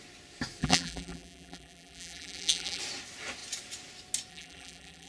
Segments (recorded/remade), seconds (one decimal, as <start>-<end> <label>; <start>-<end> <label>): 0.0-0.6 recorded; 0.6-2.8 remade; 2.8-4.3 recorded; 4.3-5.1 remade

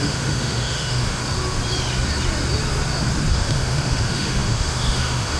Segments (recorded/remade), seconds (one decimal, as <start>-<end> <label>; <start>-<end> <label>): 0.0-1.2 remade; 1.2-3.3 recorded; 3.3-5.4 remade

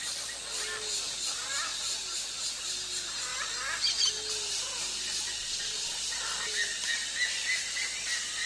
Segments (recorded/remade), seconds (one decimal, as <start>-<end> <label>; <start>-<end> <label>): 0.0-5.4 recorded; 5.4-6.0 remade; 6.0-8.5 recorded